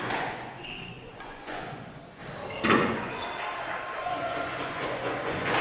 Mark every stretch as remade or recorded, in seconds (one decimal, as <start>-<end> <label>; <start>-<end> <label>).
0.0-2.2 remade; 2.2-2.7 recorded; 2.7-3.2 remade; 3.2-4.0 recorded; 4.0-5.6 remade